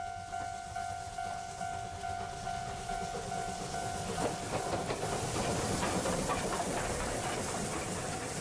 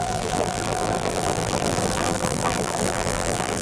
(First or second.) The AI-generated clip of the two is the second